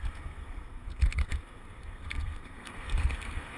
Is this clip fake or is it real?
fake